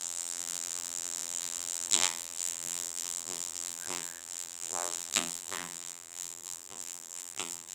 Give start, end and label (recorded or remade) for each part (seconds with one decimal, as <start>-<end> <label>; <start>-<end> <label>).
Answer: 0.0-7.7 remade

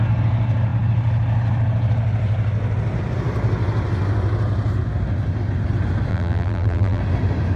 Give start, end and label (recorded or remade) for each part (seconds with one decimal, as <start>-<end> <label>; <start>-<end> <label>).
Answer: 0.0-6.1 recorded; 6.1-7.0 remade; 7.0-7.6 recorded

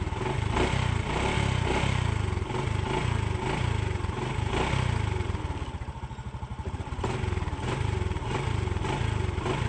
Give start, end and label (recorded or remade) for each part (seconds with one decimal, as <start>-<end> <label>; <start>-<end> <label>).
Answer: 0.0-9.7 recorded

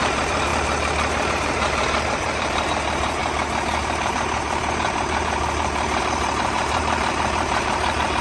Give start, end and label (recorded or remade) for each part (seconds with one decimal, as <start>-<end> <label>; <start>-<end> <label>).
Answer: 0.0-0.5 remade; 0.5-1.3 recorded; 1.3-3.2 remade; 3.2-4.1 recorded; 4.1-8.2 remade

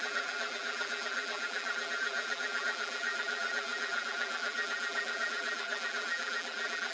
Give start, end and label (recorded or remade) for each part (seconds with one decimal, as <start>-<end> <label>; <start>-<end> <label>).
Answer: 0.0-6.9 remade

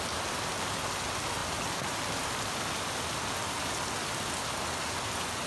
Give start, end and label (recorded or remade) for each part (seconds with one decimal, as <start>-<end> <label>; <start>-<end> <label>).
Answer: 0.0-5.5 recorded